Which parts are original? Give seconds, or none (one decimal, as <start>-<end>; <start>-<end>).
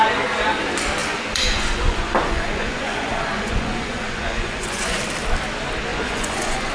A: 0.0-1.0; 5.0-5.9